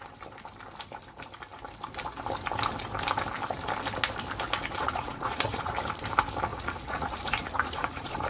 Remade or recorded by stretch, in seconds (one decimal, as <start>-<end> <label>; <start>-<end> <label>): 0.0-4.8 recorded; 4.8-5.7 remade; 5.7-6.5 recorded; 6.5-8.3 remade